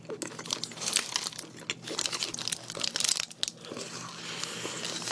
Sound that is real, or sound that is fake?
real